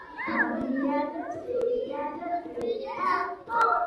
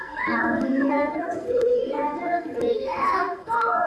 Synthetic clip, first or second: second